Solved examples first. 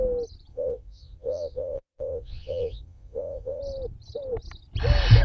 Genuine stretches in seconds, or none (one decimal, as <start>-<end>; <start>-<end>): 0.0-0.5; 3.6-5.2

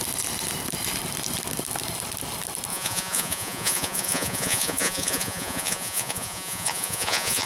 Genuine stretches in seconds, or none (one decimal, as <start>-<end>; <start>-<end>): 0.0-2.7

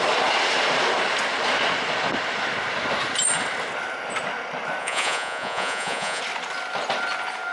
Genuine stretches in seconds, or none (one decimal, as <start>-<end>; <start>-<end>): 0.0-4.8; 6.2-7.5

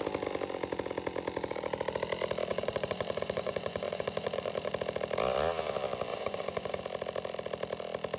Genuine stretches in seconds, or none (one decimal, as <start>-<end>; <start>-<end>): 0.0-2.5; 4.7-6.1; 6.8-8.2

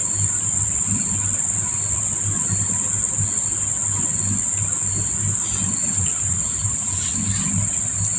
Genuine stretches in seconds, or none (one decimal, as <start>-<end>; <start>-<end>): 0.0-5.8; 7.1-8.2

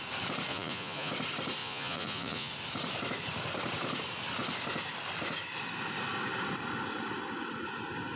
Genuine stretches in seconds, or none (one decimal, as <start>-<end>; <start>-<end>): 0.0-0.5; 1.1-1.6; 2.5-8.2

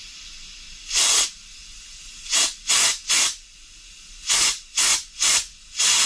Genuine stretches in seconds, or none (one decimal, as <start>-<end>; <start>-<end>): 0.0-4.9; 5.6-6.1